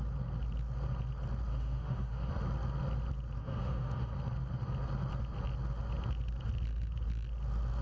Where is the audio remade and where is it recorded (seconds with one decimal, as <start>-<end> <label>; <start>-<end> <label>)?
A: 0.0-1.5 recorded; 1.5-2.3 remade; 2.3-3.4 recorded; 3.4-4.1 remade; 4.1-7.8 recorded